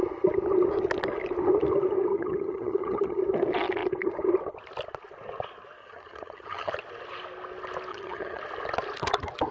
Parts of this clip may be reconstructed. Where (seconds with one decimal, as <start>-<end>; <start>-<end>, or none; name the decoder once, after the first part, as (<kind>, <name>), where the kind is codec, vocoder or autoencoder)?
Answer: 2.1-3.2 (vocoder, HiFi-GAN); 5.8-6.7; 7.9-8.4

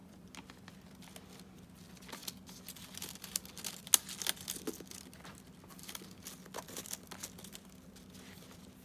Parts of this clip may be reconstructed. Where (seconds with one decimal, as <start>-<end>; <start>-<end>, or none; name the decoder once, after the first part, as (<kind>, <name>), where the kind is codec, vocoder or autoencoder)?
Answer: none

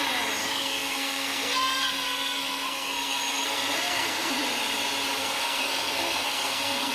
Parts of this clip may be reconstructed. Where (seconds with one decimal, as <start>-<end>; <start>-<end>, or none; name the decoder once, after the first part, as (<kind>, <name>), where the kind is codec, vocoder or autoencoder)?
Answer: 0.4-4.3 (codec, SNAC); 5.2-6.9

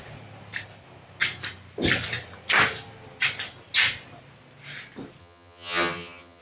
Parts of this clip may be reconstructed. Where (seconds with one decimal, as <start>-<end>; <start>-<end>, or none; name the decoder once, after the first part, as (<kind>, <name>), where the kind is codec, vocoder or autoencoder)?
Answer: 5.2-6.4 (vocoder, HiFi-GAN)

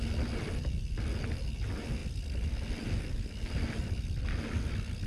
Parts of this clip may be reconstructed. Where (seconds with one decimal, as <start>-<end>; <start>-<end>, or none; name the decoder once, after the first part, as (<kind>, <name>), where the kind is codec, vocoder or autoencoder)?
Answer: none